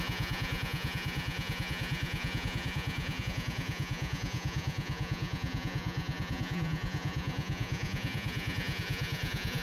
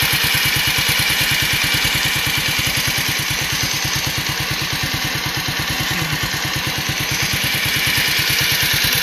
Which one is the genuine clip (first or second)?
second